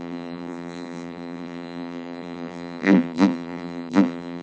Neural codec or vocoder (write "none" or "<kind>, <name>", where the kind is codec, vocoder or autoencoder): vocoder, BigVGAN v2